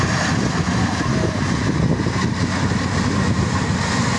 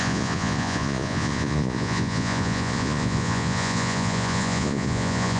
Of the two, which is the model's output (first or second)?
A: second